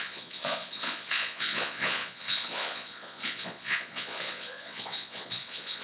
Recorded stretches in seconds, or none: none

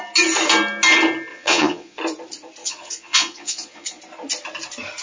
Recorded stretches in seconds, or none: 0.0-1.3; 2.0-2.6; 4.0-5.0

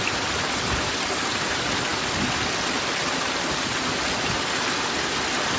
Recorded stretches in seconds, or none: 0.0-5.6

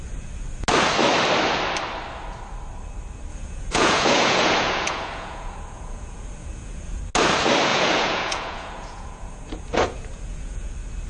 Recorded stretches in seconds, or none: 0.0-3.3; 7.0-7.7; 10.7-11.1

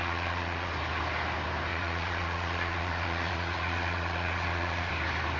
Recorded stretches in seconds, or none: 0.7-1.7; 4.9-5.4

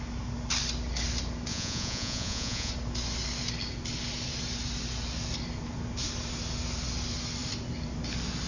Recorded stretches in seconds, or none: 0.0-1.5; 2.7-8.5